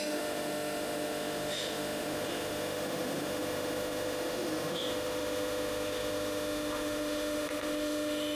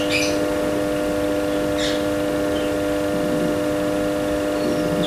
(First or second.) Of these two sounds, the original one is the second